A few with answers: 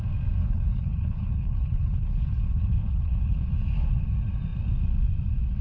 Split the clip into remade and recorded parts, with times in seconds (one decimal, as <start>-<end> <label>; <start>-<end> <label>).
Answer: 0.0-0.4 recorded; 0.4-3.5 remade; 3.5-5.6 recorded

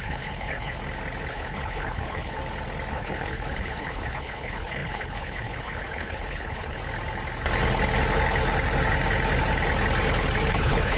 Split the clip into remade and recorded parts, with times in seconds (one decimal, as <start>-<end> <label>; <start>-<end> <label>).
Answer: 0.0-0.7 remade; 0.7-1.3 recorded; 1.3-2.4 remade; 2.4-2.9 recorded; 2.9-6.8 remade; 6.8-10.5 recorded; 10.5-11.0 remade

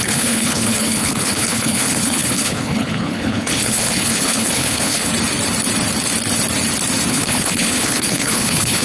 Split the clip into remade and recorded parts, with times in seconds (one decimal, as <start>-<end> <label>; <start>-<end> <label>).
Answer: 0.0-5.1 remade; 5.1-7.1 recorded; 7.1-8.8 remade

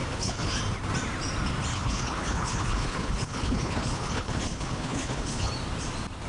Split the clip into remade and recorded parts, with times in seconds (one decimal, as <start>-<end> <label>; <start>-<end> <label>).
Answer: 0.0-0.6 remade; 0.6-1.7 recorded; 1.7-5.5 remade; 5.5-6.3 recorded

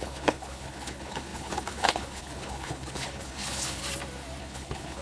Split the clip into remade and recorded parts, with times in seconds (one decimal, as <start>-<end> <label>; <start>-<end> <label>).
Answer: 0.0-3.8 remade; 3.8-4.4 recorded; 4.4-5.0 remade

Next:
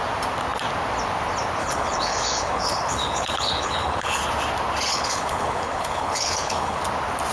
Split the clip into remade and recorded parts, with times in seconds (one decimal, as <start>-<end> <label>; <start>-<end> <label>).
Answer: 0.0-1.6 recorded; 1.6-4.2 remade; 4.2-4.9 recorded; 4.9-6.8 remade; 6.8-7.3 recorded